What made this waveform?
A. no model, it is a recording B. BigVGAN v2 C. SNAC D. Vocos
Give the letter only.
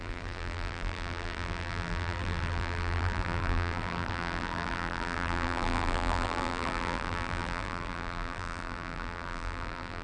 B